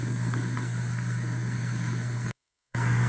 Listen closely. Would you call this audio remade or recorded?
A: remade